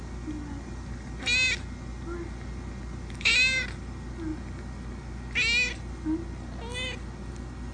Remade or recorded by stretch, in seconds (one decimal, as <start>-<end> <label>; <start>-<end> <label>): 0.0-7.7 recorded